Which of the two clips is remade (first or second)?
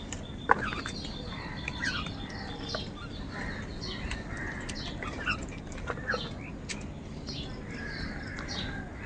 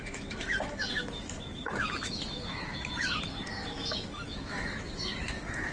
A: second